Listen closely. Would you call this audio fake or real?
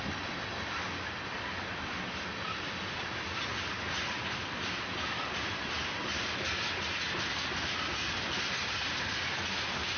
real